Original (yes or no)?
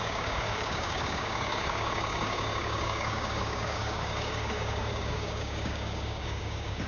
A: no